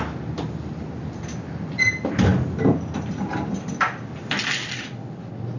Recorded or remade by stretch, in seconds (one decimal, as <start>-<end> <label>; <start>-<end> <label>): 0.0-5.6 recorded